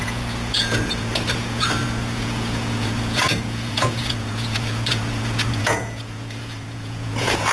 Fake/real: fake